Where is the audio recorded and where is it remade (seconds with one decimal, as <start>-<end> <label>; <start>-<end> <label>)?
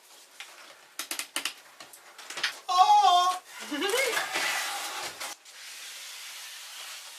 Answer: 0.0-7.2 recorded